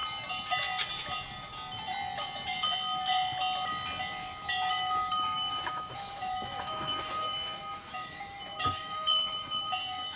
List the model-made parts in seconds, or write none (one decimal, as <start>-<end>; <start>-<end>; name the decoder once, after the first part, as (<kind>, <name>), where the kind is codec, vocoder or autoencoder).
4.7-10.2 (autoencoder, DAC-VAE)